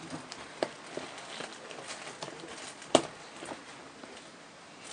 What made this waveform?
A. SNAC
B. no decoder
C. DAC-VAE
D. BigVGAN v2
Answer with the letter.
B